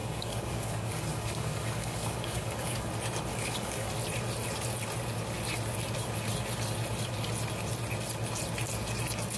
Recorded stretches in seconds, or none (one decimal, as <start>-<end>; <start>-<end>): 2.9-3.3; 3.9-9.4